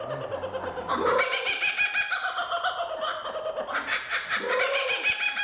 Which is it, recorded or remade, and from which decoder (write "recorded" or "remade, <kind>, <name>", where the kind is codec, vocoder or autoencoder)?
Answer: recorded